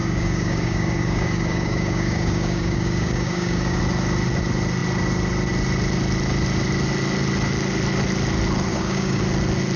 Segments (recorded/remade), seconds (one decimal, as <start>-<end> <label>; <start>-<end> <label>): 0.0-3.8 remade; 3.8-8.7 recorded; 8.7-9.2 remade; 9.2-9.8 recorded